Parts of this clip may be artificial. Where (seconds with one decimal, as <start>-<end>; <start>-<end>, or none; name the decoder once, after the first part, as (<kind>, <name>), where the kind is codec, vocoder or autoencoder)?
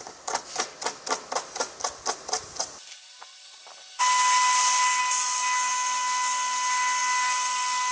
none